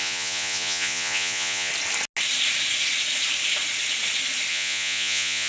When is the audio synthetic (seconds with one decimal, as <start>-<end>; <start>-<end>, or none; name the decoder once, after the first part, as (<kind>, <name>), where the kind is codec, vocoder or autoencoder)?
0.0-1.7 (vocoder, Vocos); 4.5-5.5